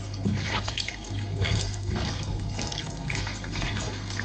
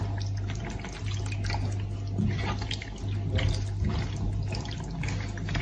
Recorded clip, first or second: second